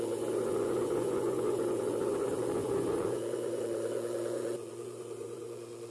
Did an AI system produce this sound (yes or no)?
yes